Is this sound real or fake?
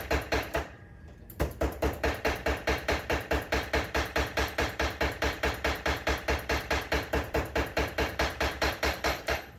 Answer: fake